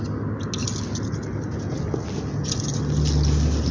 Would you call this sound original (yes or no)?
yes